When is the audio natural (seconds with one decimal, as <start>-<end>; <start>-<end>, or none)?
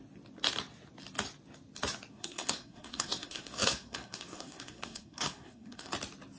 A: 0.0-2.1; 5.9-6.4